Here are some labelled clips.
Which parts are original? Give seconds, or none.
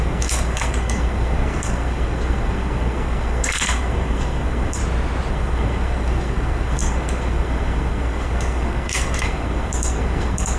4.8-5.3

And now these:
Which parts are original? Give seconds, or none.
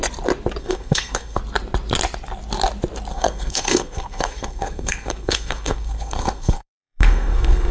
0.0-0.6; 1.4-3.1